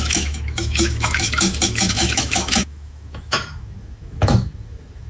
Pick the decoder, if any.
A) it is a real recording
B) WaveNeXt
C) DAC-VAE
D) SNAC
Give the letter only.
C